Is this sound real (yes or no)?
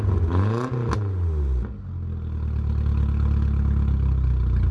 yes